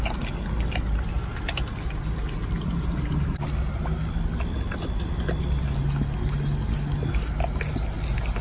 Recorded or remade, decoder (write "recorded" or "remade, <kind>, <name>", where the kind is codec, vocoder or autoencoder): recorded